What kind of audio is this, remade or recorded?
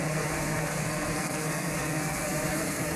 remade